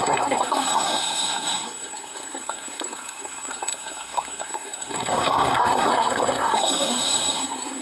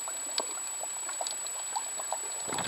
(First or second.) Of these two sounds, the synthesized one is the first